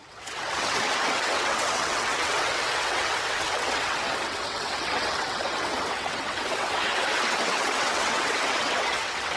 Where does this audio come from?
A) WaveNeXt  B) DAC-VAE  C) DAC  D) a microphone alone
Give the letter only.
A